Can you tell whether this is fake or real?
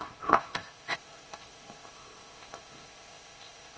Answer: fake